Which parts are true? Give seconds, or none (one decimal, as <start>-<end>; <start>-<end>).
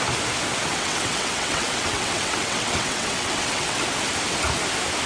0.0-0.7; 3.8-5.1